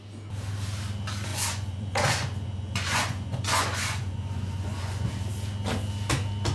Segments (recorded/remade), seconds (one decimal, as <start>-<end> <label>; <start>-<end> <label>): 0.0-1.3 recorded; 1.3-5.1 remade; 5.1-6.5 recorded